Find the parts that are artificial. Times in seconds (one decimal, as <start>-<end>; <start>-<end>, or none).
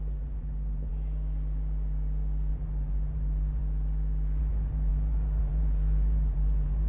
0.0-0.9; 2.5-3.6; 4.4-6.9